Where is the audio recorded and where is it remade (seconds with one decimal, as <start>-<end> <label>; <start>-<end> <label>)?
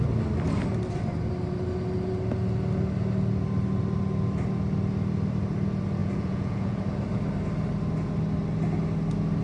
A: 0.0-6.0 recorded; 6.0-6.8 remade; 6.8-9.4 recorded